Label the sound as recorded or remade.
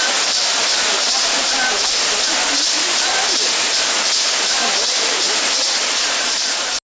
recorded